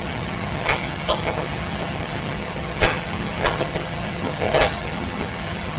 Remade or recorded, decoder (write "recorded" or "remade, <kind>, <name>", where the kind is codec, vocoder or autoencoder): remade, vocoder, HiFi-GAN